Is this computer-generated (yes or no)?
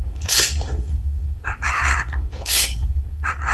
yes